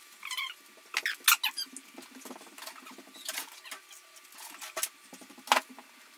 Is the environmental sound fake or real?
real